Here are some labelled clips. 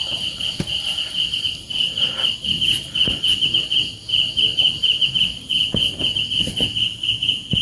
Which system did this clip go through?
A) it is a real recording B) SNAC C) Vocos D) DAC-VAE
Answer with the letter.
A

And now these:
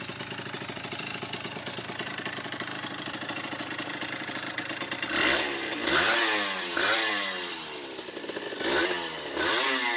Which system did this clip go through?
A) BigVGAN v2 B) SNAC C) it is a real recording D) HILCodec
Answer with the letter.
A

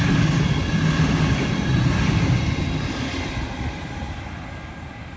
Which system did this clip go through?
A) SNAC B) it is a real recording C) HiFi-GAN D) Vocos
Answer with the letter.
B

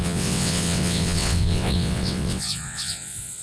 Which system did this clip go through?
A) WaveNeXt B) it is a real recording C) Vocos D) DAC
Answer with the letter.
A